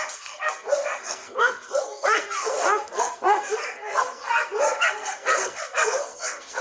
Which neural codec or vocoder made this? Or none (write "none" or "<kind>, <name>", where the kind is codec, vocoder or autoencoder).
codec, SNAC